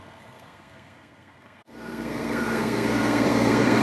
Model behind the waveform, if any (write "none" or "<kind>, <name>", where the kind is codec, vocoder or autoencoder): codec, SNAC